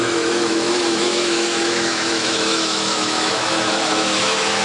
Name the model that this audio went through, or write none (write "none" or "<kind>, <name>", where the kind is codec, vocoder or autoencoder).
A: autoencoder, DAC-VAE